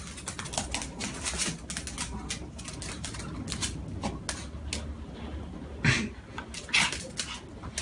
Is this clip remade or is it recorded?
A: recorded